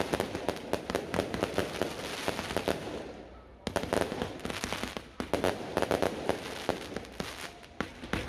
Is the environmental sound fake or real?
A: real